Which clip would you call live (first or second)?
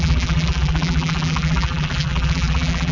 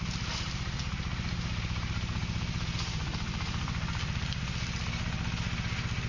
second